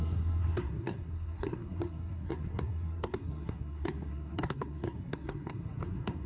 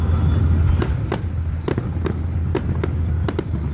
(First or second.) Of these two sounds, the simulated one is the first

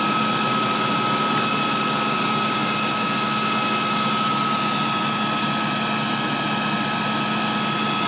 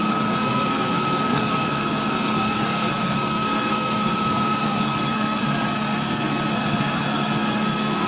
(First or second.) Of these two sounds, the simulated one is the second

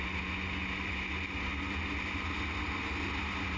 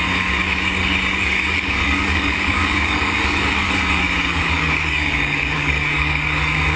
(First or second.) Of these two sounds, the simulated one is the second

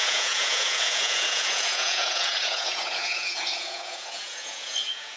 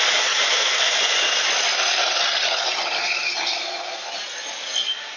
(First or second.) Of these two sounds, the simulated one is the first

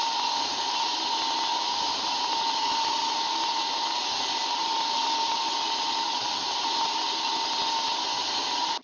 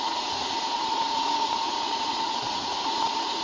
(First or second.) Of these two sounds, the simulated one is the second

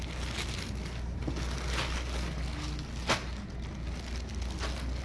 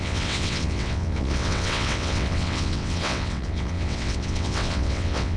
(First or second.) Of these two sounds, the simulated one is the second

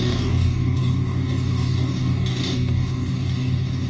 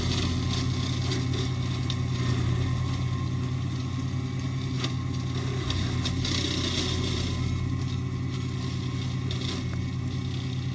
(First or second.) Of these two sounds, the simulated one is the first